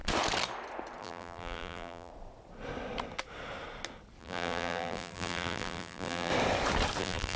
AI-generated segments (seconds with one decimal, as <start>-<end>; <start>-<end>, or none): 1.0-2.1; 4.2-6.3; 7.0-7.4

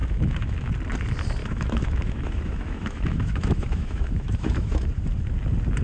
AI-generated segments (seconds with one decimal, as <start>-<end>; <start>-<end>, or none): 0.0-0.7; 1.4-4.9

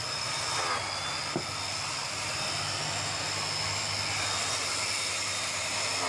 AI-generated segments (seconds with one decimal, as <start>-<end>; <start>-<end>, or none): none

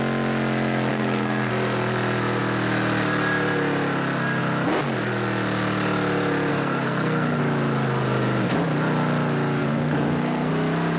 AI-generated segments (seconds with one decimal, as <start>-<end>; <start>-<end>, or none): 0.9-1.5; 6.5-7.4; 9.6-10.5

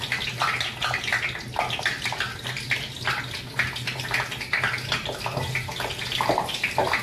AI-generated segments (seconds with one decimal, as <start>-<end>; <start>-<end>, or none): none